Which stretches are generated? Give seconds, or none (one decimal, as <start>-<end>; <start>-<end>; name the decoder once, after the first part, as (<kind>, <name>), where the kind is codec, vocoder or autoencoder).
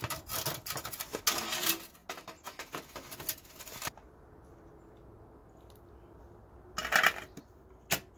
none